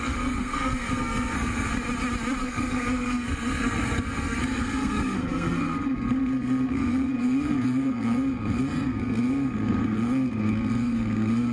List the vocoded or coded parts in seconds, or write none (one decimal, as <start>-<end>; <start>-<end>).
0.0-1.7; 2.4-11.5